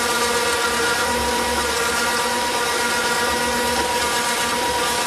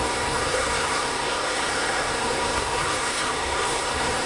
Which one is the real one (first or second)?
first